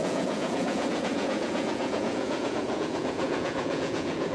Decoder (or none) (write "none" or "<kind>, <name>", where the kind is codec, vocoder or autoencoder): vocoder, Vocos